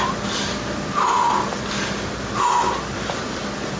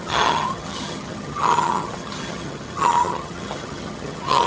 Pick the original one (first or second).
first